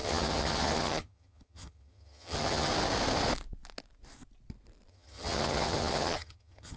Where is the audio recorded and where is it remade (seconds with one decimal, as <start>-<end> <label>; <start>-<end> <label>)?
0.0-2.7 remade; 2.7-4.9 recorded; 4.9-6.8 remade